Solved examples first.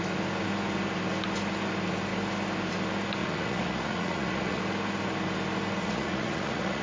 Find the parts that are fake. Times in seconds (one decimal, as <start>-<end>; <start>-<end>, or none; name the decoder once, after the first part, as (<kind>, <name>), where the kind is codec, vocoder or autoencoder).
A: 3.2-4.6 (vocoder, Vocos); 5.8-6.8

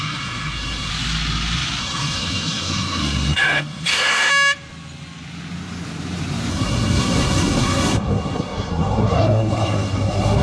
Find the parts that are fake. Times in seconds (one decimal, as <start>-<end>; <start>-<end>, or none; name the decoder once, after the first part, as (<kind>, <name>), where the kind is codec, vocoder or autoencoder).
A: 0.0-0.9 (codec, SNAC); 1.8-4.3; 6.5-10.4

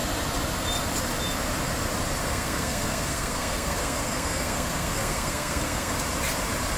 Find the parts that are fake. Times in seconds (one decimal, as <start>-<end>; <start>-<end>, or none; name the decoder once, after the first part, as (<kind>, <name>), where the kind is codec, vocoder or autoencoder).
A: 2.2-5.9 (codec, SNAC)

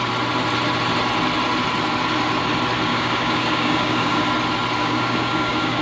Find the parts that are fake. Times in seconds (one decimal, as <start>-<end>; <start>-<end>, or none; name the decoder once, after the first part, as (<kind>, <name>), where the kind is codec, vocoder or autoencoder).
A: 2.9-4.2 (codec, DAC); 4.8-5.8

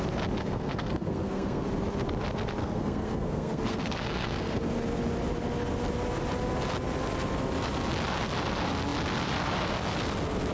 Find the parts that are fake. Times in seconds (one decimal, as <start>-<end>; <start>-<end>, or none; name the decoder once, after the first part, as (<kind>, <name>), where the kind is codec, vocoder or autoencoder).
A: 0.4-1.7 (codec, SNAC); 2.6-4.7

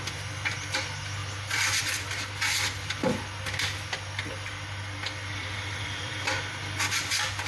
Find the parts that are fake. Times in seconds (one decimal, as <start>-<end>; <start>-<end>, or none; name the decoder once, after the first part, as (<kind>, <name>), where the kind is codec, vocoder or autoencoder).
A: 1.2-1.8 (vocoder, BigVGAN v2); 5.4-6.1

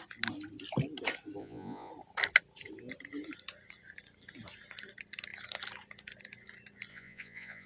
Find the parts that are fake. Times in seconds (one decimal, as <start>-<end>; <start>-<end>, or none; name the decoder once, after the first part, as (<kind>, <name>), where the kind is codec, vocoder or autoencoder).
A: 1.4-1.9 (vocoder, Vocos); 6.9-7.7